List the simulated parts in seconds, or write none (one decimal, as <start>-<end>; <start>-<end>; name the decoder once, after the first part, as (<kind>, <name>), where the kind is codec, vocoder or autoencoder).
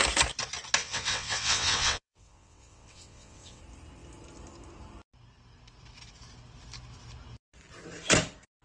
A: 0.8-3.6 (vocoder, WaveNeXt)